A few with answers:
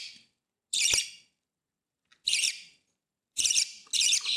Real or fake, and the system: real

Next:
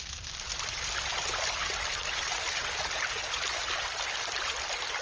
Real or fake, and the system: real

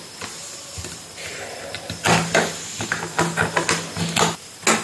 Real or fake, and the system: real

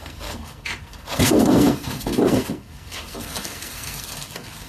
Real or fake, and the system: fake, codec, SNAC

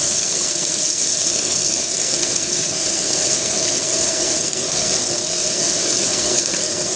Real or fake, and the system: fake, codec, SNAC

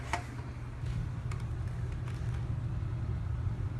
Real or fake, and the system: real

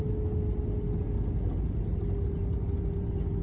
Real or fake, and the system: real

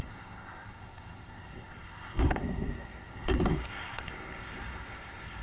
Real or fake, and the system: fake, codec, SNAC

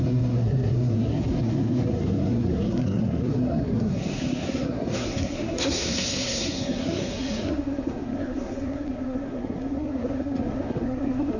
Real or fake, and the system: fake, codec, SNAC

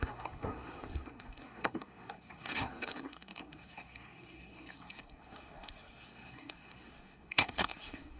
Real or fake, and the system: fake, codec, SNAC